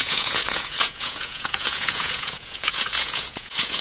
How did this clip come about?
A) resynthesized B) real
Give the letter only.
A